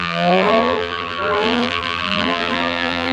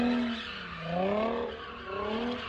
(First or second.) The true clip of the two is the second